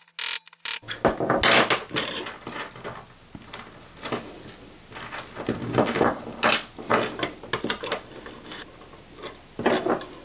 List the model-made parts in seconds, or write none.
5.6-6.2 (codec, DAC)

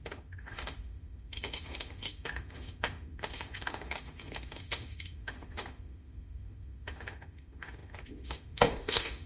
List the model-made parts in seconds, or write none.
0.0-9.3 (autoencoder, DAC-VAE)

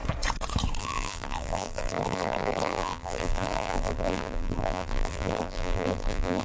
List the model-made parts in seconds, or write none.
0.8-6.4 (vocoder, BigVGAN v2)

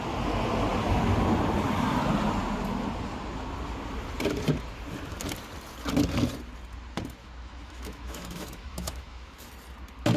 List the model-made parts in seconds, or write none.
7.2-9.5 (autoencoder, DAC-VAE)

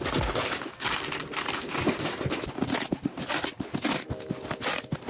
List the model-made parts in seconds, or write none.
none